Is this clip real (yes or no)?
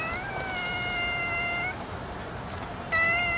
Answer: yes